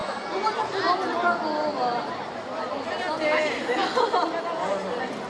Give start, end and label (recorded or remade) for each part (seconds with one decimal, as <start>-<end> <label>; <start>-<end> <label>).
0.0-3.2 remade; 3.2-5.3 recorded